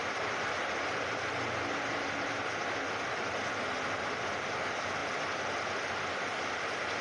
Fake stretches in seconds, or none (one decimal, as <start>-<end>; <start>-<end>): none